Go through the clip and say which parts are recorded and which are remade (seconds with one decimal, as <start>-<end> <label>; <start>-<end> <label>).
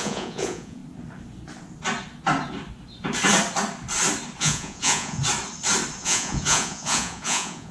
0.0-0.8 remade; 0.8-4.4 recorded; 4.4-5.2 remade; 5.2-6.0 recorded; 6.0-7.7 remade